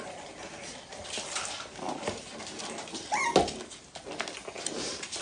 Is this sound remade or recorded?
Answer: recorded